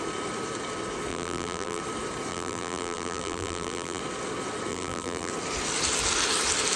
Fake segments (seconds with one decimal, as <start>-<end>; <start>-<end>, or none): 1.1-1.8; 2.3-4.0; 4.7-5.3